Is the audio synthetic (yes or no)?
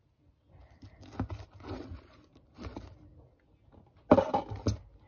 no